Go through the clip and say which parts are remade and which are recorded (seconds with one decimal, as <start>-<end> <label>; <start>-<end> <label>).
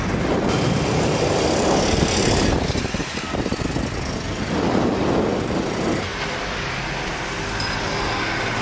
0.0-8.6 recorded